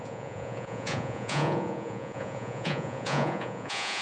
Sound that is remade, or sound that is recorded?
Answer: remade